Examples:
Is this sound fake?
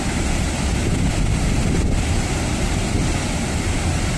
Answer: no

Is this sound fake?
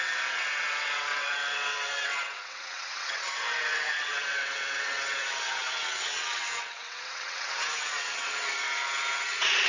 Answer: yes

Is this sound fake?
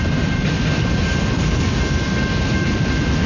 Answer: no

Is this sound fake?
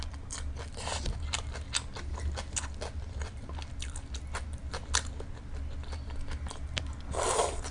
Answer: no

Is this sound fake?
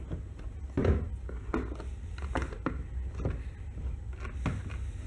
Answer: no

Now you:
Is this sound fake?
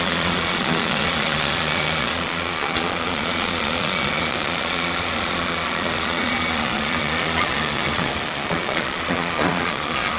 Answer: yes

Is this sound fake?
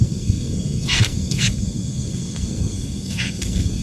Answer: yes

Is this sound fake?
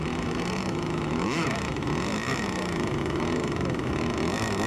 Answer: yes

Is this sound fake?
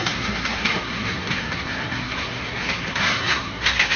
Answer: yes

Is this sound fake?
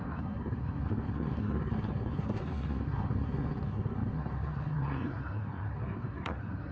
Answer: yes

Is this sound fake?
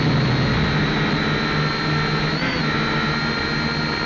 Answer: no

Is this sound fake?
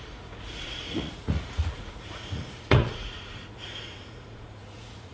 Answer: yes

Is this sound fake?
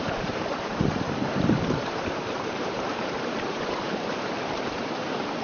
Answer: yes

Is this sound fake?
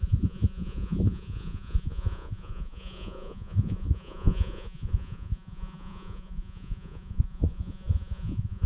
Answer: yes